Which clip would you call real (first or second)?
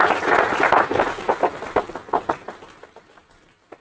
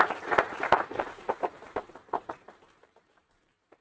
first